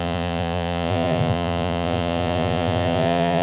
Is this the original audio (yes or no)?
no